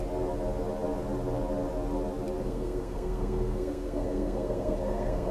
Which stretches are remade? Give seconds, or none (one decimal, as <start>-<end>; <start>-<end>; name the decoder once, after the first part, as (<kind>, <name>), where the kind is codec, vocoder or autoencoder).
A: 2.4-5.3 (codec, SNAC)